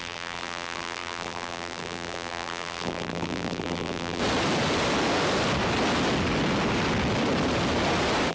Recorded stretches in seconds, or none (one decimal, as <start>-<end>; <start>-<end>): 4.2-8.3

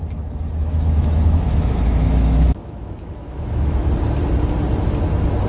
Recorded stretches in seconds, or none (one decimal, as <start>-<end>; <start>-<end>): 0.0-0.6; 3.9-5.5

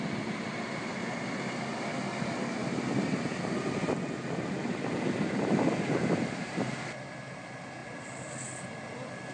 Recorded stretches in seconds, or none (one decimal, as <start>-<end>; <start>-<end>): 0.0-9.3